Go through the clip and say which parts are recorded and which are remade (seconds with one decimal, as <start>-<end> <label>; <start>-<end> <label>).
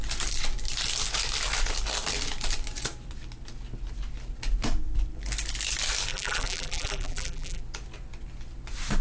0.0-6.1 recorded; 6.1-7.6 remade; 7.6-9.0 recorded